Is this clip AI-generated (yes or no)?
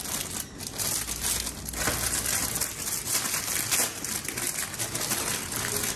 no